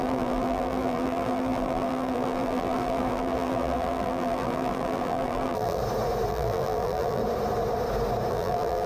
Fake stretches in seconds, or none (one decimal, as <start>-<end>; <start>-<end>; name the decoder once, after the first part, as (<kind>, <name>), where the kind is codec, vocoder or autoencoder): 0.0-5.8 (vocoder, BigVGAN v2); 6.3-7.2; 8.3-8.9